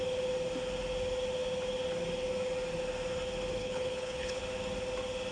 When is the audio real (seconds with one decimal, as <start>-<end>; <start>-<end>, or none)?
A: 0.0-3.6; 4.4-5.3